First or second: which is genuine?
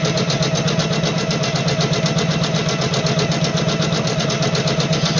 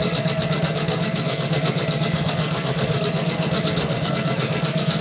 first